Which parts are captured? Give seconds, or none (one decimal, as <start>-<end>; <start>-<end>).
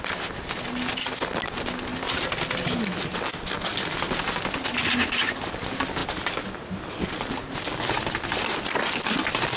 0.0-9.6